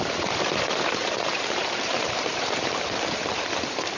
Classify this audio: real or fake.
fake